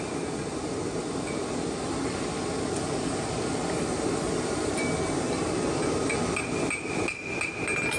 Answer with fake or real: real